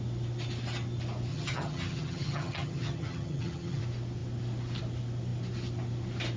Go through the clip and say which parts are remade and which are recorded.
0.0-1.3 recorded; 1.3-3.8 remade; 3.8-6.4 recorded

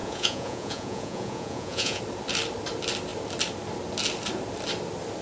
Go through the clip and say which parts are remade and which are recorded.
0.0-2.0 remade; 2.0-5.2 recorded

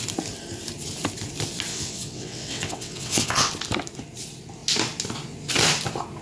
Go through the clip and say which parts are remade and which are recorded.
0.0-1.7 recorded; 1.7-3.5 remade; 3.5-6.2 recorded

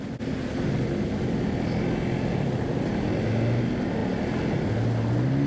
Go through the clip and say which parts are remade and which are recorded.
0.0-5.5 recorded

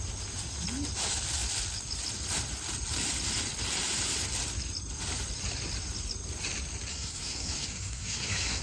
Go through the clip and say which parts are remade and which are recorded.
0.0-6.9 recorded; 6.9-8.6 remade

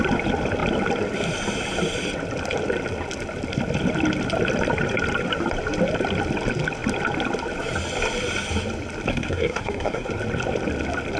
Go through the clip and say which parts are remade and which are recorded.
0.0-9.1 recorded; 9.1-10.1 remade; 10.1-11.2 recorded

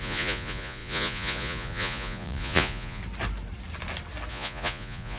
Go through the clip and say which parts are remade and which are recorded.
0.0-3.0 remade; 3.0-4.3 recorded; 4.3-5.2 remade